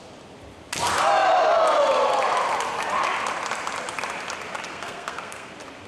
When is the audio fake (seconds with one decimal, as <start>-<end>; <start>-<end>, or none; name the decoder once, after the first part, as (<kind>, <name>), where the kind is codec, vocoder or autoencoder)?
4.7-5.5 (codec, SNAC)